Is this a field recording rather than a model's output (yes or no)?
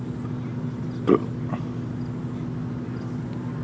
yes